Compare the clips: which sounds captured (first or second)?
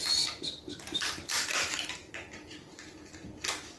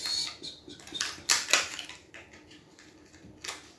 second